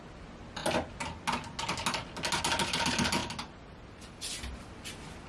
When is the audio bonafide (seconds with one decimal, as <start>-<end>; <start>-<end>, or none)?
0.0-5.3